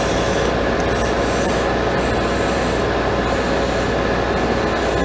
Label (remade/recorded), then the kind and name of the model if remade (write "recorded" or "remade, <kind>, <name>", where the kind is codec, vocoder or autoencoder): recorded